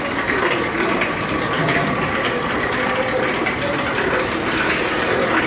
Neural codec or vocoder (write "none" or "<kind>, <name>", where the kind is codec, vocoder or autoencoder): none